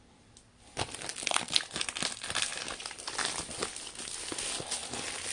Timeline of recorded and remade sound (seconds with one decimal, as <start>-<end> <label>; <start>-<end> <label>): 0.0-5.3 recorded